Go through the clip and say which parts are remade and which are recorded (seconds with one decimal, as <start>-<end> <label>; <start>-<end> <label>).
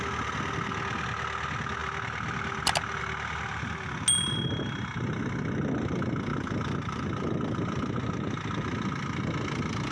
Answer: 0.0-6.3 recorded; 6.3-7.0 remade; 7.0-9.9 recorded